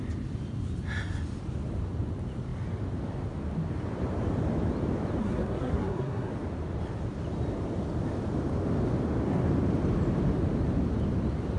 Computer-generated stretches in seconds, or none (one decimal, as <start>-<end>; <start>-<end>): 5.2-6.3